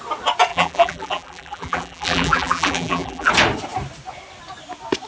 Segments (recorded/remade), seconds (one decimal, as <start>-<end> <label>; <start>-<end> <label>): 0.0-0.5 recorded; 0.5-3.3 remade; 3.3-5.1 recorded